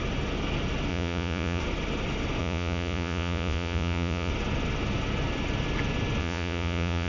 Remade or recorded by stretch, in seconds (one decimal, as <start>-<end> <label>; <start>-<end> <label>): 0.0-0.9 recorded; 0.9-1.6 remade; 1.6-2.4 recorded; 2.4-4.3 remade; 4.3-6.2 recorded; 6.2-7.1 remade